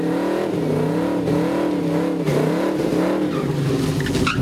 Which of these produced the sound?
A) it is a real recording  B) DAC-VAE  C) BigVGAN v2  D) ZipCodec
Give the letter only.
A